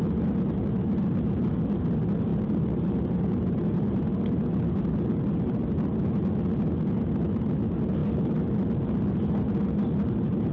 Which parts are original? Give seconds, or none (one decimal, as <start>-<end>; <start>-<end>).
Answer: 0.0-2.3; 5.1-8.0; 8.5-10.5